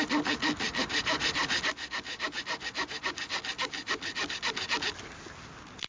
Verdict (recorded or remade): recorded